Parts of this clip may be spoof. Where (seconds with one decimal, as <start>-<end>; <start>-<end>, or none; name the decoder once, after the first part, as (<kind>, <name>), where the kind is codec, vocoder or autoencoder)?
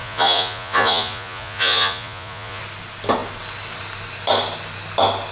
0.0-2.6 (vocoder, Vocos)